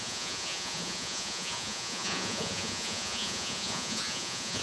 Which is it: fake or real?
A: fake